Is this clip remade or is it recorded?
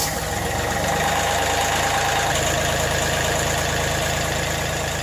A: recorded